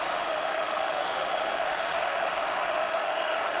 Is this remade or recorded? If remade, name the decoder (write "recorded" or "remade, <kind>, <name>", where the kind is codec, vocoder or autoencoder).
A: remade, autoencoder, DAC-VAE